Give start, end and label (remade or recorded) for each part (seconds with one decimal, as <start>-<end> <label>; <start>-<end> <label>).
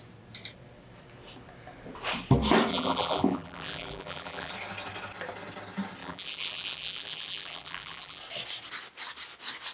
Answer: 0.0-2.7 recorded; 2.7-4.5 remade; 4.5-6.0 recorded; 6.0-8.2 remade; 8.2-9.7 recorded